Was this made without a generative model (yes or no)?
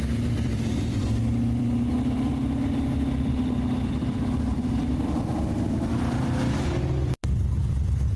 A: no